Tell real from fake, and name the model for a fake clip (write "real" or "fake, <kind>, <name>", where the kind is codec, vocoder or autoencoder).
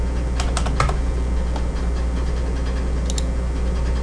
real